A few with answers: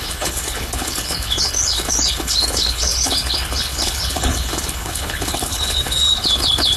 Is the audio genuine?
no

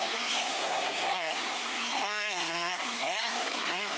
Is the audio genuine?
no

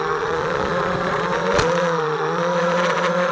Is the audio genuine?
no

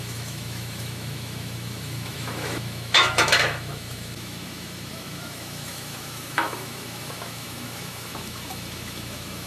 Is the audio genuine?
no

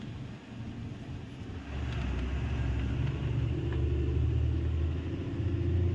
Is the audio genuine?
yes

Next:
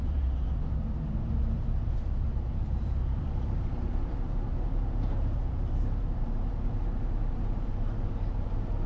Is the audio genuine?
no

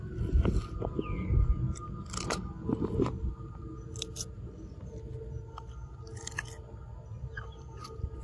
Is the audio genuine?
yes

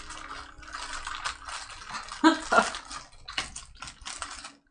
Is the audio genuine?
yes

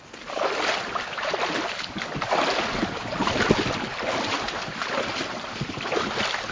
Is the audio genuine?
yes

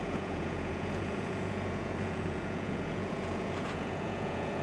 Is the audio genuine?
no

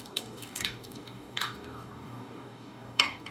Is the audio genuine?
no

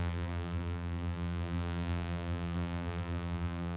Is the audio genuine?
no